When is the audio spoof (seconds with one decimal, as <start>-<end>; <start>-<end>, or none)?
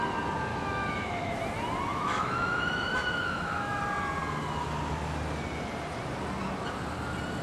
0.5-1.4; 1.9-3.8